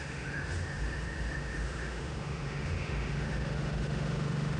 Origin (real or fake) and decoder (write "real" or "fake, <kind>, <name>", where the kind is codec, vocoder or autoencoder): fake, autoencoder, DAC-VAE